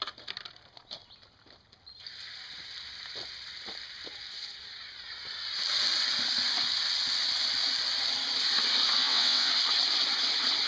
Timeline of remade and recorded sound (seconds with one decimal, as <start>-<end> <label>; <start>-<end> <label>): 0.0-9.0 recorded; 9.0-9.5 remade; 9.5-10.7 recorded